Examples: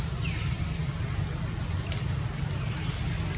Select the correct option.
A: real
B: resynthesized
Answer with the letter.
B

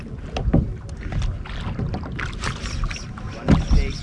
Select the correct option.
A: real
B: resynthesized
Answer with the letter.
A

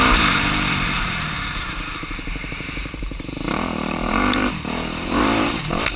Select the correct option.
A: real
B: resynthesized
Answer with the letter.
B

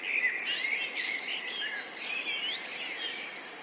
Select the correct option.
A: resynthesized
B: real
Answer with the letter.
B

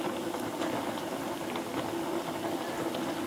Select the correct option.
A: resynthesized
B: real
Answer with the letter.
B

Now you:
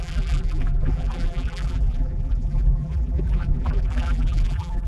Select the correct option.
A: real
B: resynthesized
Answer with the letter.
B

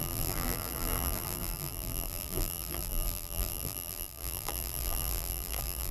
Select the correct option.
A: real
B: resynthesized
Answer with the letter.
B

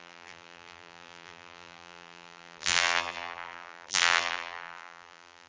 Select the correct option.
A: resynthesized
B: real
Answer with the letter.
A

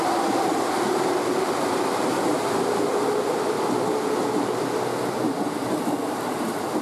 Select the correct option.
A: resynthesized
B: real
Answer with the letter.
B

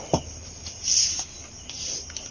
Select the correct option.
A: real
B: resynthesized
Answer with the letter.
A